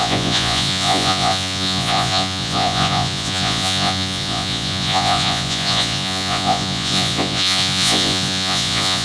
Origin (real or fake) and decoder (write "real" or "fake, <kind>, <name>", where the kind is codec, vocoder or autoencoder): fake, vocoder, Vocos